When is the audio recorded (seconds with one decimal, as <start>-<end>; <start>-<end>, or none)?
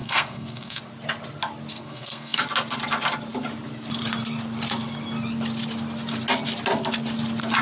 0.8-1.7; 2.4-7.6